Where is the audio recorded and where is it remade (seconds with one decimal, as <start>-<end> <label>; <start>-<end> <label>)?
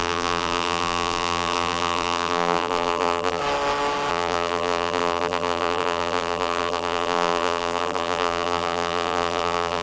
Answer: 0.0-3.4 remade; 3.4-4.1 recorded; 4.1-9.8 remade